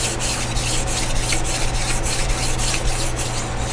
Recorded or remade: recorded